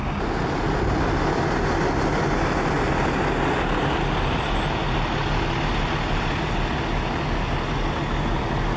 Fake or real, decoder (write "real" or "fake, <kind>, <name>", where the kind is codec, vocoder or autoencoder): real